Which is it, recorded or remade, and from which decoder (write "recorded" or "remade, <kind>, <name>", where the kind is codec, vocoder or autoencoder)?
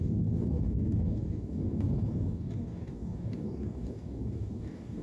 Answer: remade, codec, DAC